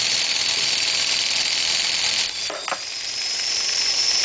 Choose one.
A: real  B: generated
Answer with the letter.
A